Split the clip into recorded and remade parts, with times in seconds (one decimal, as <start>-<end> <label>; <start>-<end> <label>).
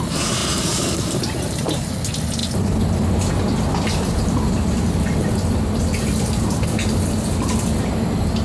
0.0-0.4 recorded; 0.4-1.9 remade; 1.9-8.4 recorded